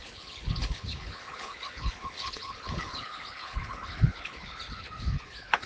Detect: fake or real fake